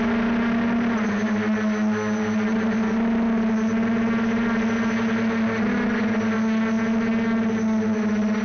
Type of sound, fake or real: real